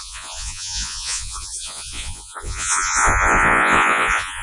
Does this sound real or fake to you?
fake